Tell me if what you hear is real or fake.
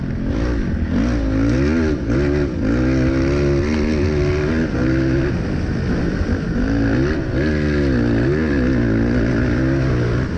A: real